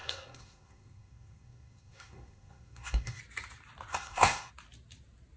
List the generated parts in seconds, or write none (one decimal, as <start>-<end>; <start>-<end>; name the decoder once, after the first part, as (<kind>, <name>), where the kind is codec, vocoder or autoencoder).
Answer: 0.0-3.2 (codec, SNAC); 3.9-4.5